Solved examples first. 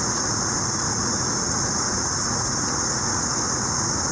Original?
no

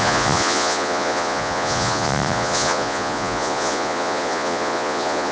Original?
no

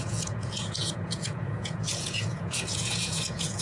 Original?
no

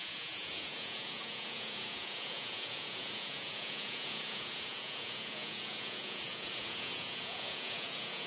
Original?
no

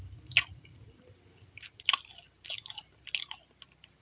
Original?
yes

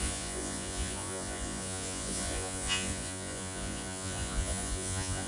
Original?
no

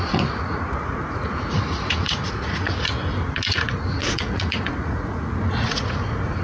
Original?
no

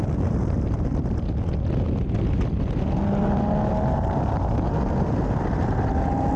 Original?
yes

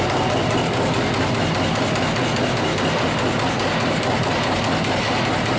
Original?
yes